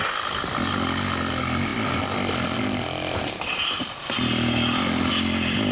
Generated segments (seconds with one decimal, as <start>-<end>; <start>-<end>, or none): none